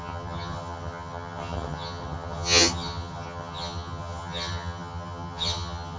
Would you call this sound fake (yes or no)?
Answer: yes